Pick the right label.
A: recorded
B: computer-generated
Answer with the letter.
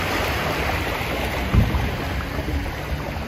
A